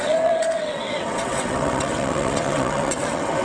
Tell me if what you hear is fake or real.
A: fake